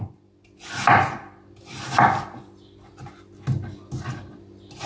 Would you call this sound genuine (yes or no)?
yes